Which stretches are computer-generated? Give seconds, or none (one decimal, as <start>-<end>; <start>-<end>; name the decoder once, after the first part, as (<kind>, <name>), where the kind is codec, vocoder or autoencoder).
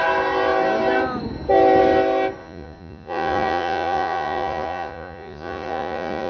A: 2.4-6.3 (vocoder, Vocos)